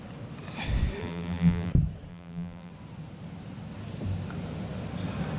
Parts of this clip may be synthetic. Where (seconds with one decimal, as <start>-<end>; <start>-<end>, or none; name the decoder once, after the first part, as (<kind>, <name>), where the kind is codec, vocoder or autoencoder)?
1.0-1.7 (vocoder, BigVGAN v2); 2.1-2.7